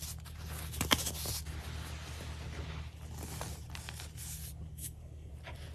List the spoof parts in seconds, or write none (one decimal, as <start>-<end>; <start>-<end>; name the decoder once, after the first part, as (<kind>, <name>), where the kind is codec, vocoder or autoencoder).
4.7-5.3 (codec, SNAC)